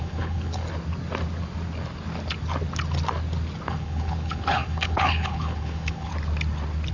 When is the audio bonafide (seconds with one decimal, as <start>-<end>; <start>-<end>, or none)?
0.6-3.7; 6.1-6.9